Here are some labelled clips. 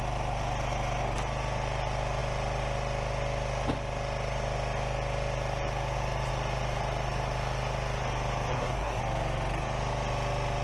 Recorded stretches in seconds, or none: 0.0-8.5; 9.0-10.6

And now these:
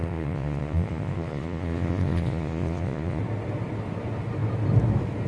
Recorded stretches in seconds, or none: 3.2-5.3

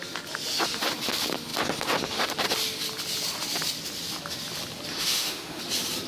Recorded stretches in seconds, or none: 0.0-4.9; 5.6-6.1